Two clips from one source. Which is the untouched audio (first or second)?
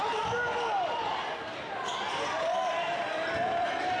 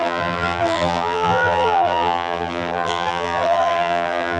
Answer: first